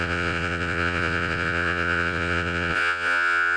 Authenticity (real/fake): fake